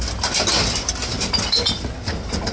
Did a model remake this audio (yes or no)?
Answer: no